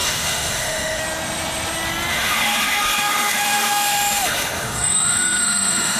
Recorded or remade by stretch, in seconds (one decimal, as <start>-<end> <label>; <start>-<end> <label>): 0.0-1.0 remade; 1.0-2.1 recorded; 2.1-6.0 remade